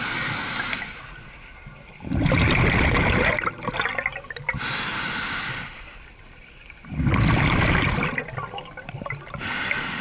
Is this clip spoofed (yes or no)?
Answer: no